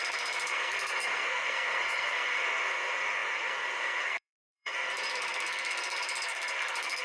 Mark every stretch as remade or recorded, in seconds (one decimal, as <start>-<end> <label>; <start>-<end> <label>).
0.0-7.0 remade

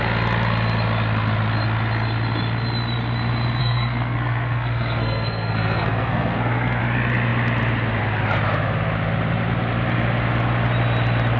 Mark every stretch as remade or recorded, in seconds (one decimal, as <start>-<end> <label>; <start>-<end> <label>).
0.0-3.6 recorded; 3.6-6.8 remade; 6.8-11.4 recorded

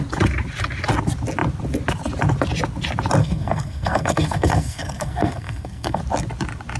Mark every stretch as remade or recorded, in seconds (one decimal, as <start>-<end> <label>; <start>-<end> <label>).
0.0-3.2 recorded; 3.2-6.0 remade; 6.0-6.8 recorded

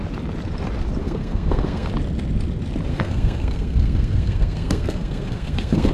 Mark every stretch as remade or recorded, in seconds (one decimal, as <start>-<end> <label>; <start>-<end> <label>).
0.0-1.0 recorded; 1.0-1.9 remade; 1.9-2.9 recorded; 2.9-5.9 remade

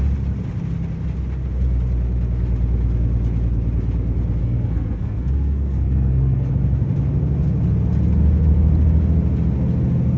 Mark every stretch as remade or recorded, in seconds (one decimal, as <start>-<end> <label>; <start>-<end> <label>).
0.0-4.4 recorded; 4.4-6.5 remade; 6.5-10.2 recorded

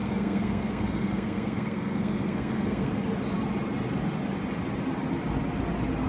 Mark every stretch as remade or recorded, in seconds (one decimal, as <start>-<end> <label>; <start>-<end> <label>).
0.0-2.9 remade; 2.9-6.1 recorded